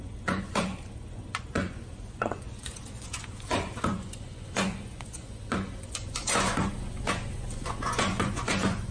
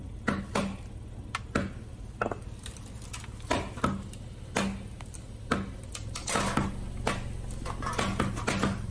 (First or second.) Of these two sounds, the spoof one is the first